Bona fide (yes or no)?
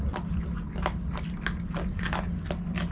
yes